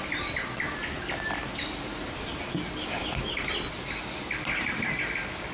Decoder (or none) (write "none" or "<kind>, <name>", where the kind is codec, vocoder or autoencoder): none